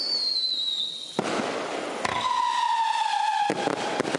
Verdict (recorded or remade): recorded